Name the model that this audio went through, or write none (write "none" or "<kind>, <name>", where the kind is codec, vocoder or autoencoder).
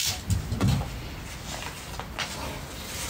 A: none